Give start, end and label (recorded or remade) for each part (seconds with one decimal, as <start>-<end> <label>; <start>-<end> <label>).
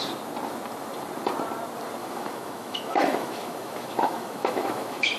0.0-2.0 recorded; 2.0-5.2 remade